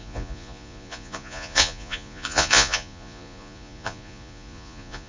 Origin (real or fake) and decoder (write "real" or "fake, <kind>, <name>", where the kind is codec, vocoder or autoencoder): fake, vocoder, Vocos